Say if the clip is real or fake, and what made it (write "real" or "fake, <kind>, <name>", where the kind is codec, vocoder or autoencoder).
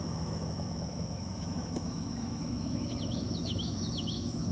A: fake, autoencoder, DAC-VAE